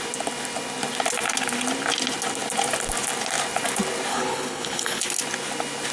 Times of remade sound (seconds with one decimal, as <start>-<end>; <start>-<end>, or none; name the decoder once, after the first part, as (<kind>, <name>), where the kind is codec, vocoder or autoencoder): 4.1-5.0 (codec, HILCodec)